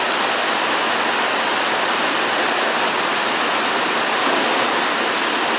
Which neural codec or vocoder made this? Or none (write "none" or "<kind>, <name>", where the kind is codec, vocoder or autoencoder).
none